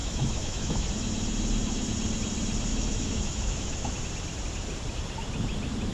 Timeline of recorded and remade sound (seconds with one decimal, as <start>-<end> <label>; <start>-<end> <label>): 0.0-0.9 remade; 0.9-2.7 recorded; 2.7-4.0 remade; 4.0-5.9 recorded

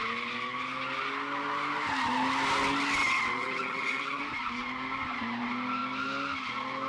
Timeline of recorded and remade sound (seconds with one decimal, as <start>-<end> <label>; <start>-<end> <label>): 0.0-3.0 recorded; 3.0-4.2 remade; 4.2-6.9 recorded

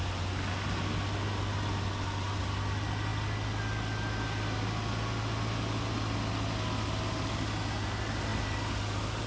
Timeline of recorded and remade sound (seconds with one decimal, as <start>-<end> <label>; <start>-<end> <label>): 0.0-9.3 recorded

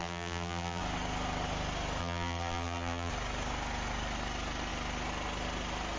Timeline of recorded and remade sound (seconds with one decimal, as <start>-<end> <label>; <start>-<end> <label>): 0.0-0.8 remade; 0.8-2.0 recorded; 2.0-3.1 remade; 3.1-6.0 recorded

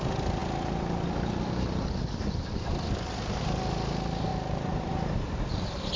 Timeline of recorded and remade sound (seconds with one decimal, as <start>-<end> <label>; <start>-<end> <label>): 0.0-6.0 recorded

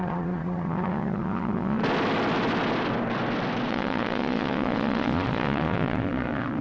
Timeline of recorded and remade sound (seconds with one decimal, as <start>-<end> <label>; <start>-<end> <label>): 0.0-1.8 remade; 1.8-3.7 recorded; 3.7-6.6 remade